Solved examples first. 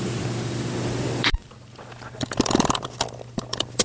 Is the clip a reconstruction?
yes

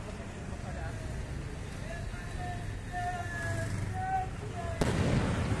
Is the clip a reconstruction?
no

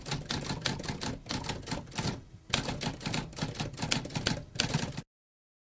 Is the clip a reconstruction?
no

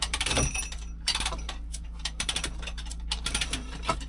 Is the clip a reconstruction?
yes